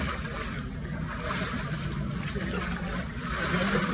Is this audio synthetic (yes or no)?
no